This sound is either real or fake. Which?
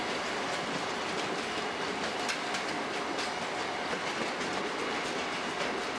real